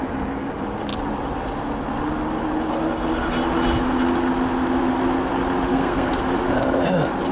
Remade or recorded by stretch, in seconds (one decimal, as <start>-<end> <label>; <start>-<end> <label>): 0.0-5.7 recorded; 5.7-6.2 remade; 6.2-7.3 recorded